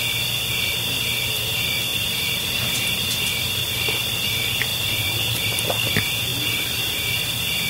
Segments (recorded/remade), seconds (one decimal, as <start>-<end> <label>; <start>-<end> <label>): 0.0-1.9 recorded; 1.9-3.2 remade; 3.2-4.7 recorded; 4.7-5.4 remade; 5.4-6.3 recorded; 6.3-7.7 remade